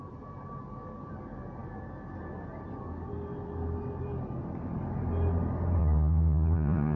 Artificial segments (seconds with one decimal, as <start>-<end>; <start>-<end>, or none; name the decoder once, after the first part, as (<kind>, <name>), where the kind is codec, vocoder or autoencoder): 5.8-7.0 (vocoder, Vocos)

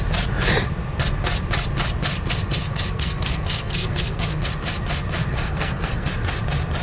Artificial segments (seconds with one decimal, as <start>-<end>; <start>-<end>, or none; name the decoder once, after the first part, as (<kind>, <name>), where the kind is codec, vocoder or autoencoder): 2.6-4.5 (codec, SNAC); 5.3-6.1

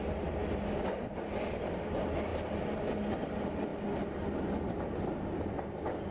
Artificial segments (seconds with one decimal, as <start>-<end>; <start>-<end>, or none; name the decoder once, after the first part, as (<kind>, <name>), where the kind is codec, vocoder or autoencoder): none

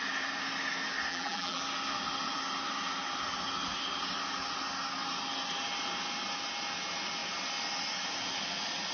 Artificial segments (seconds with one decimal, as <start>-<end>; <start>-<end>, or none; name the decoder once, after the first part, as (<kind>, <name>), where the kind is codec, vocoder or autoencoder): 1.1-1.6 (vocoder, BigVGAN v2)

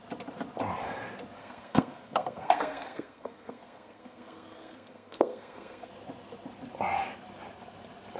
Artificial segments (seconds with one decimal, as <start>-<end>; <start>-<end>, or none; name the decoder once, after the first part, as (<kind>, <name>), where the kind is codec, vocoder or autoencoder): 1.4-5.9 (codec, SNAC)

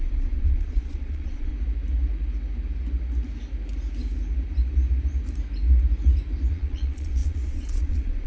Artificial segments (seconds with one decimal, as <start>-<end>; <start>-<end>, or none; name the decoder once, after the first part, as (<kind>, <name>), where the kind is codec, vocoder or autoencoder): 0.0-1.5 (vocoder, Vocos); 6.5-8.3